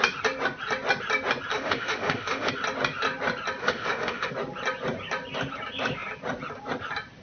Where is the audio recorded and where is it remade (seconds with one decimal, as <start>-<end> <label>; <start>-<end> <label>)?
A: 0.0-1.5 recorded; 1.5-2.5 remade; 2.5-3.6 recorded; 3.6-4.3 remade; 4.3-7.2 recorded